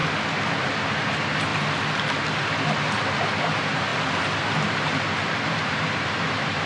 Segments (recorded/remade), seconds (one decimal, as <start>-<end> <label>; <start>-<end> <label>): 0.0-0.8 recorded; 0.8-1.5 remade; 1.5-3.4 recorded; 3.4-3.9 remade; 3.9-5.3 recorded; 5.3-6.7 remade